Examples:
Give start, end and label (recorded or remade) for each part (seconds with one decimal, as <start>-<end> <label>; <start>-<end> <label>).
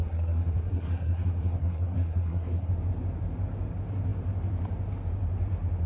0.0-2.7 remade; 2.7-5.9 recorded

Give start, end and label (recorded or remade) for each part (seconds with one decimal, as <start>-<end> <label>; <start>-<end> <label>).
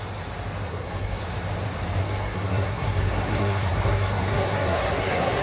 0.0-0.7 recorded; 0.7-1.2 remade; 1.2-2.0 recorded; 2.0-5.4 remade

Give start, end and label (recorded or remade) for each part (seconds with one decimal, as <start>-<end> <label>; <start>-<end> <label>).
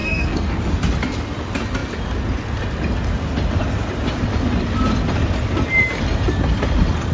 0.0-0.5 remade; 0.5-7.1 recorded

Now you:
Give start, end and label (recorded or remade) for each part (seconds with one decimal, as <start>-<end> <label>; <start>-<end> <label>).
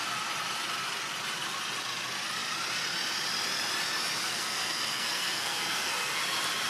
0.0-4.2 recorded; 4.2-6.2 remade; 6.2-6.7 recorded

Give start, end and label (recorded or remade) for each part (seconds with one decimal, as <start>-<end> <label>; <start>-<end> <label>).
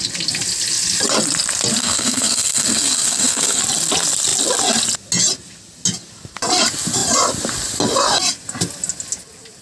0.0-1.8 recorded; 1.8-3.6 remade; 3.6-9.6 recorded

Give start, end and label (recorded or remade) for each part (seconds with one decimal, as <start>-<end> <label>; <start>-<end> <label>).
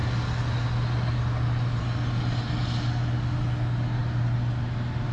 0.0-5.1 recorded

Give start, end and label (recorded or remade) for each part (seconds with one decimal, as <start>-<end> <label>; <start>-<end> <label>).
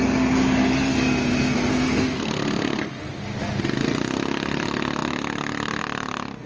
0.0-1.7 recorded; 1.7-3.0 remade; 3.0-6.5 recorded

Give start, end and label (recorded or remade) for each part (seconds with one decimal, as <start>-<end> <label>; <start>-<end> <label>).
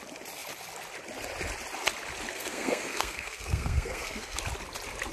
0.0-2.3 recorded; 2.3-4.4 remade; 4.4-5.1 recorded